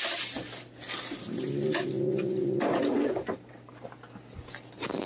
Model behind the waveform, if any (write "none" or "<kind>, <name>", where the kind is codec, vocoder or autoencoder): none